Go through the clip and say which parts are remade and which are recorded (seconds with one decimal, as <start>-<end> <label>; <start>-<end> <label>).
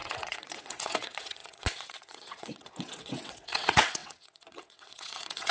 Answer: 0.0-5.5 remade